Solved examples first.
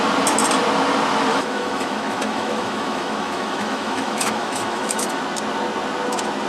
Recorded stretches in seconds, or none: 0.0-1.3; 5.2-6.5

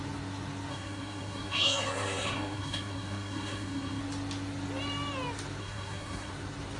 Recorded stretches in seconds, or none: 0.0-0.7; 4.0-5.6; 6.3-6.8

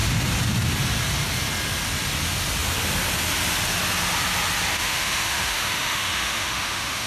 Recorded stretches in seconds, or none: 0.0-4.7

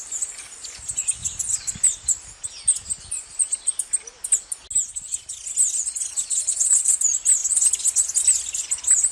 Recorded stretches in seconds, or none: 0.0-9.1

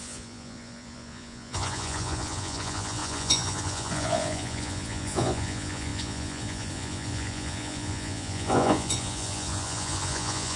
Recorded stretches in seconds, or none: none

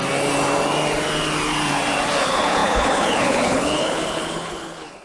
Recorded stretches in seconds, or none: 0.0-2.2